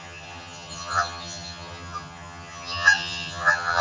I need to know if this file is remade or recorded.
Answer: remade